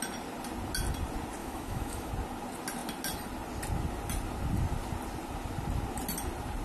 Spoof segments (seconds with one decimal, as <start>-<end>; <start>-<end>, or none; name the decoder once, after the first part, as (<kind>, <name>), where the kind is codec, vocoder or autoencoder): 1.4-2.1 (autoencoder, DAC-VAE)